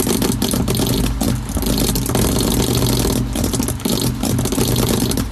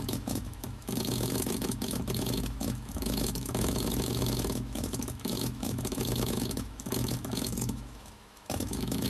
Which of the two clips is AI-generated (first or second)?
second